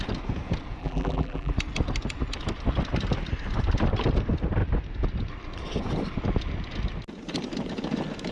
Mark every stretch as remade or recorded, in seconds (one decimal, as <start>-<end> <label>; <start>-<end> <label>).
0.0-0.8 recorded; 0.8-1.5 remade; 1.5-8.3 recorded